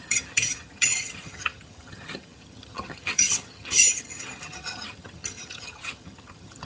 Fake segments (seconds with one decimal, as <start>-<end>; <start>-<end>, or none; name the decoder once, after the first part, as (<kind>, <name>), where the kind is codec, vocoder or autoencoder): 0.0-6.6 (vocoder, HiFi-GAN)